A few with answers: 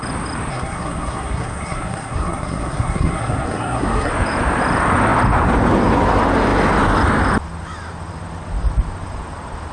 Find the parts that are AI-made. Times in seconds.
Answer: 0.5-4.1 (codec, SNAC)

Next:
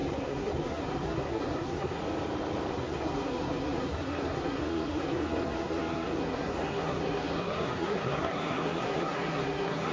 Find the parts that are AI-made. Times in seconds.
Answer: 0.0-2.0 (codec, SNAC); 2.7-9.9

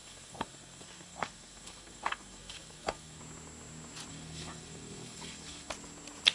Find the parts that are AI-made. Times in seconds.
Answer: 0.0-3.2 (codec, SNAC); 4.1-5.7

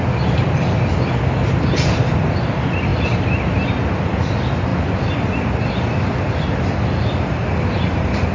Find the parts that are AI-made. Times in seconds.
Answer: none